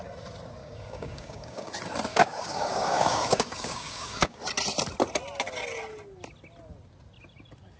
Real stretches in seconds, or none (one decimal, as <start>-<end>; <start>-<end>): 0.0-0.6; 1.7-2.1; 4.4-7.8